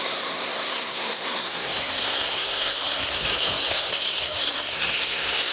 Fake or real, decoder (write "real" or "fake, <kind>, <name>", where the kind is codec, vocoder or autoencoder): fake, codec, SNAC